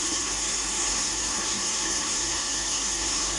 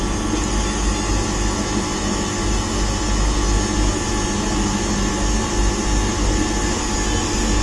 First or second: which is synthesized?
first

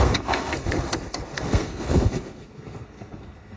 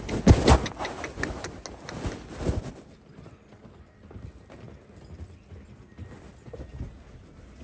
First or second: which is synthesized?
first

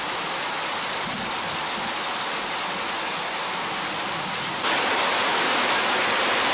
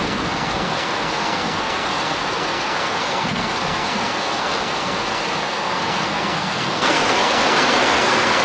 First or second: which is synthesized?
second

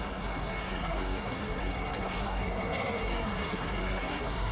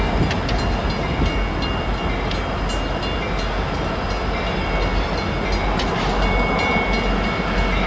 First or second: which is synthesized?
first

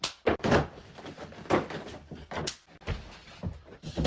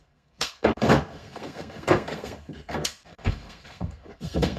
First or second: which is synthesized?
second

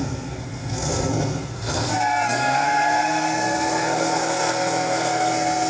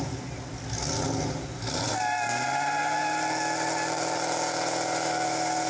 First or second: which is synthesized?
first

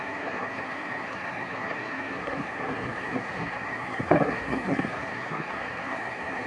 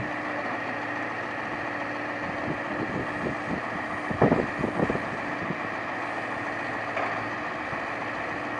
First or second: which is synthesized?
first